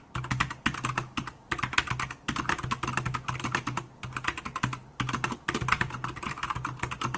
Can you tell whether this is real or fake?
real